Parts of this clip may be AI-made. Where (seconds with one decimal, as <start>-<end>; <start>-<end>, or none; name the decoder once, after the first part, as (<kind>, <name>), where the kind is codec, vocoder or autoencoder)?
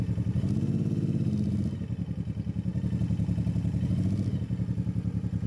none